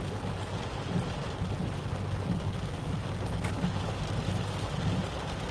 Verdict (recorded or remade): recorded